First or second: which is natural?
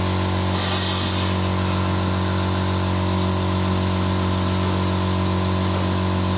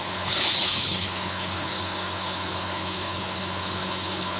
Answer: first